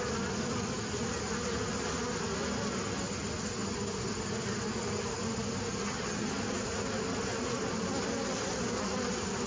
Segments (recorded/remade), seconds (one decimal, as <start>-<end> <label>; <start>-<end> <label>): 0.0-5.7 recorded; 5.7-6.3 remade; 6.3-9.5 recorded